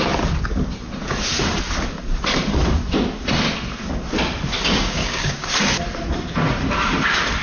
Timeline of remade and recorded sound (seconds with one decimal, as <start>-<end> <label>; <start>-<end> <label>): 0.0-4.8 recorded; 4.8-5.5 remade; 5.5-7.4 recorded